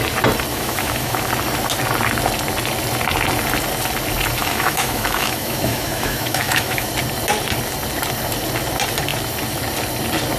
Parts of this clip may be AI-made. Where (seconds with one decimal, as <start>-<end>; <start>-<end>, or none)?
0.5-1.3; 4.4-6.9